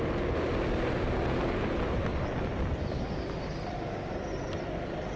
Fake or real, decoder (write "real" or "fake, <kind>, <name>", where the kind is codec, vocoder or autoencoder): real